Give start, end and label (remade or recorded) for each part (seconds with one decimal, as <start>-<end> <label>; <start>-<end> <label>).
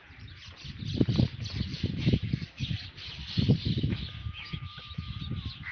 0.0-1.7 recorded; 1.7-2.6 remade; 2.6-4.2 recorded; 4.2-5.2 remade; 5.2-5.7 recorded